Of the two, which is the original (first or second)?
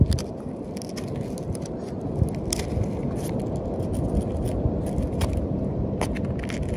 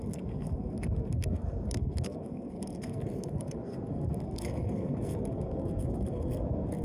first